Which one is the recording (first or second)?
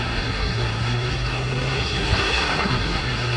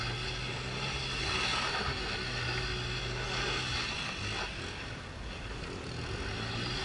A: second